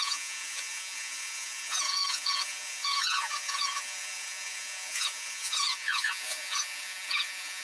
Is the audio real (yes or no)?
no